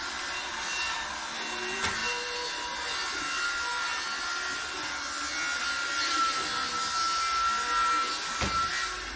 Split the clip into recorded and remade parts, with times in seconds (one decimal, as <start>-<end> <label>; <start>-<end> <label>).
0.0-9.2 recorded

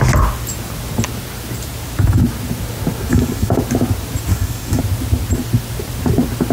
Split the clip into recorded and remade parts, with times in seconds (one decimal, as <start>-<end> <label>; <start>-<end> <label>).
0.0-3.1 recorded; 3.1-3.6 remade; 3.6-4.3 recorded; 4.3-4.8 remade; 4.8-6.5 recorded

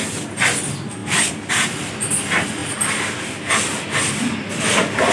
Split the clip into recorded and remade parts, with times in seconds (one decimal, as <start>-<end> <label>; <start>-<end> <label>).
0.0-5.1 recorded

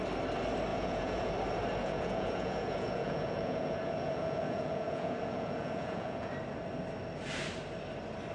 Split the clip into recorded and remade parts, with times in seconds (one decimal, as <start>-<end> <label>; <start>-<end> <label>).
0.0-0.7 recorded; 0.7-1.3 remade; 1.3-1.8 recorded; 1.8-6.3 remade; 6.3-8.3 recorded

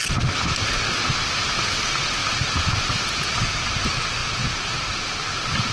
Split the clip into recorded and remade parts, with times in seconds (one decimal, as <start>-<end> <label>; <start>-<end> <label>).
0.0-5.7 recorded

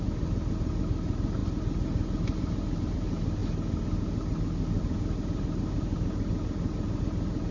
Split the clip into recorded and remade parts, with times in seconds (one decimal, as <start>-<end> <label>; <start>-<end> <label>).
0.0-7.5 recorded